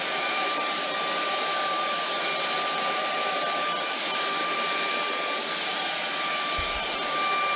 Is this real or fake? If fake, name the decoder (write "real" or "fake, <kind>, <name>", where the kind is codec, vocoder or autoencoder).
fake, vocoder, BigVGAN v2